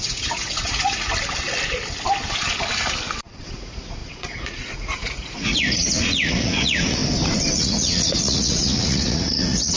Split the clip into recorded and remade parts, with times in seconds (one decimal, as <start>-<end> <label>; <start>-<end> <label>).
0.0-1.1 remade; 1.1-3.4 recorded; 3.4-7.0 remade; 7.0-7.5 recorded; 7.5-9.8 remade